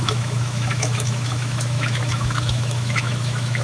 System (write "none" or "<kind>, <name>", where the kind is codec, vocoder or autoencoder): autoencoder, DAC-VAE